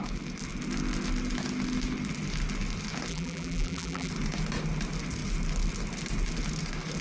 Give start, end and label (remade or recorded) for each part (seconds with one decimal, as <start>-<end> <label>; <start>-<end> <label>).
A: 0.0-3.1 recorded; 3.1-4.1 remade; 4.1-7.0 recorded